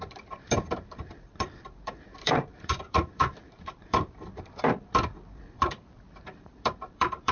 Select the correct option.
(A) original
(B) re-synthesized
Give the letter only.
B